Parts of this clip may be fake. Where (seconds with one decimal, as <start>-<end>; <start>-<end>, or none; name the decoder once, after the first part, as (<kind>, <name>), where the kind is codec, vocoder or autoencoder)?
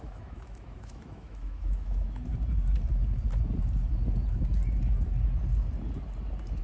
0.0-2.3 (autoencoder, DAC-VAE)